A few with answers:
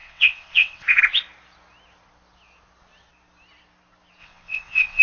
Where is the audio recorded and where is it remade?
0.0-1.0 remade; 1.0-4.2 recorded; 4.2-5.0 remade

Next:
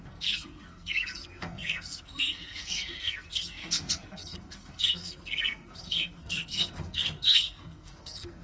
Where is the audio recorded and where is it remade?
0.0-8.4 remade